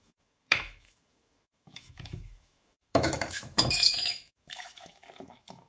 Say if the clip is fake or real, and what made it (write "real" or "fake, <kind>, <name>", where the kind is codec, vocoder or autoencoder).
fake, autoencoder, DAC-VAE